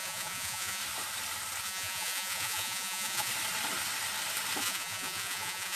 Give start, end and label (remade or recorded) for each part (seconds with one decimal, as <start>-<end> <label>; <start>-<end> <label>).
0.0-0.8 remade; 0.8-1.6 recorded; 1.6-3.3 remade; 3.3-4.6 recorded; 4.6-5.8 remade